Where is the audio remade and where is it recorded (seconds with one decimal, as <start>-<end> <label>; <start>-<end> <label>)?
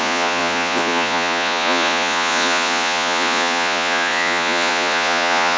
0.0-5.6 remade